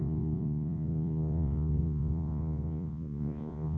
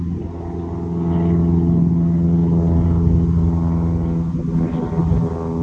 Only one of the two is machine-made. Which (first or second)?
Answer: first